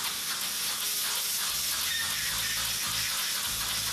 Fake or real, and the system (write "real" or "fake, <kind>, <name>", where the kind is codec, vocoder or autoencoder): real